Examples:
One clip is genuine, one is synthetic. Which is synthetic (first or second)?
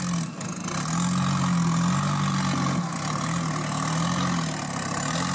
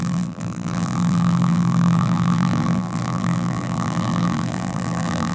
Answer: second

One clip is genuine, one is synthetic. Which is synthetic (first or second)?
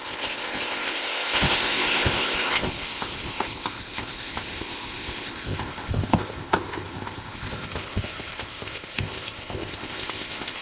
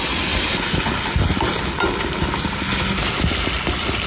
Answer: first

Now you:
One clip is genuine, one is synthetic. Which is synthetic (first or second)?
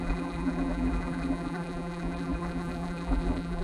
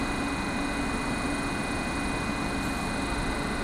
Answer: first